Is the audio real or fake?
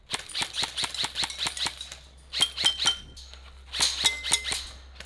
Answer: real